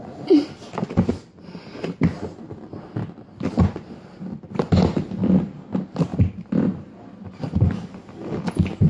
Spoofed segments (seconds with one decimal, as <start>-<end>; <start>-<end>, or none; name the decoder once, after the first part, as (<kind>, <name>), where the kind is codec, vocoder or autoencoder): none